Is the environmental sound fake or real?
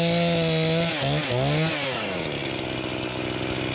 real